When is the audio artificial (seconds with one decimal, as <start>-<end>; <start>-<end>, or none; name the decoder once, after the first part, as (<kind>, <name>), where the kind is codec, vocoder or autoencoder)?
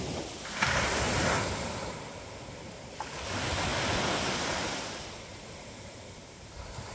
none